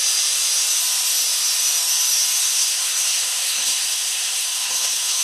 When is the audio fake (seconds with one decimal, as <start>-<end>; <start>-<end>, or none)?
2.4-5.2